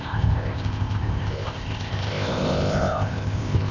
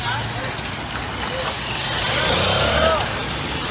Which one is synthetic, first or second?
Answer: first